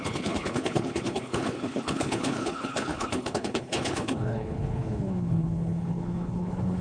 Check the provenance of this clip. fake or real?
fake